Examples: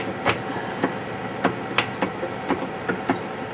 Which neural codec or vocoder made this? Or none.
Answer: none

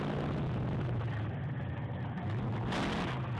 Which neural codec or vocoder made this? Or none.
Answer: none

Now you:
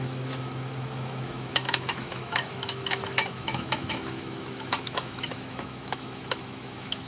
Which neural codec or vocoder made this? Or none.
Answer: autoencoder, DAC-VAE